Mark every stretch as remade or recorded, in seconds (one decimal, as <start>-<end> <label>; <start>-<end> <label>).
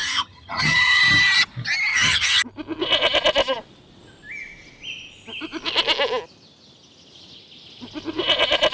0.0-1.0 remade; 1.0-1.9 recorded; 1.9-2.4 remade; 2.4-8.7 recorded